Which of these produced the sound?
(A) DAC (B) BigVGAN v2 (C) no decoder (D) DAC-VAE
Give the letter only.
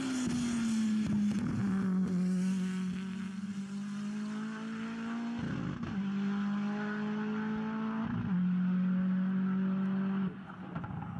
C